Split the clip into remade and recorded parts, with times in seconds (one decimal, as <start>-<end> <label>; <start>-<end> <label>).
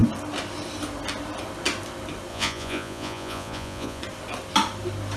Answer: 0.0-2.3 recorded; 2.3-4.0 remade; 4.0-5.2 recorded